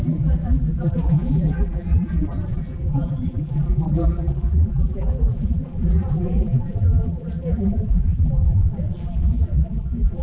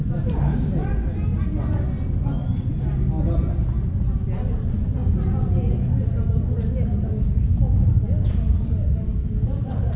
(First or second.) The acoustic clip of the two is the second